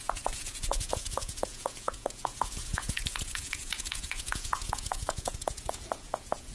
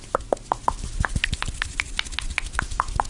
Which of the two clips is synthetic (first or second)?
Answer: first